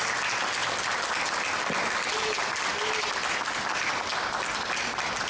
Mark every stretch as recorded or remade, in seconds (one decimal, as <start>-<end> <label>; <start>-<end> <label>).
0.0-5.3 recorded